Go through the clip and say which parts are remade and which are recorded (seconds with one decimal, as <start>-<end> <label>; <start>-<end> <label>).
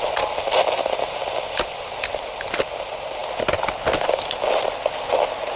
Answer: 0.0-5.6 recorded